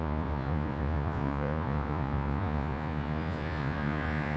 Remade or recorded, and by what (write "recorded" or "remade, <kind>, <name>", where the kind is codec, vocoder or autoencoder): remade, vocoder, Vocos